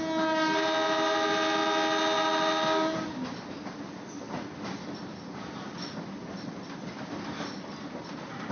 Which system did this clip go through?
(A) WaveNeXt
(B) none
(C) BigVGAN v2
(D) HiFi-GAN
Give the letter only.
B